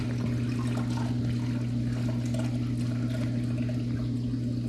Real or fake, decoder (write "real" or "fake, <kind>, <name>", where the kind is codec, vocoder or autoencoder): real